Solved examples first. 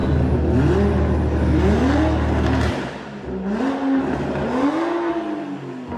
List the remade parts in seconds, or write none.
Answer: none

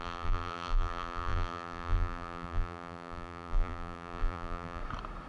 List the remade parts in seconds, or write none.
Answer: 0.0-4.8 (vocoder, BigVGAN v2)